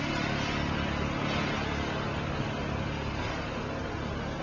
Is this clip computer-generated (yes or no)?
no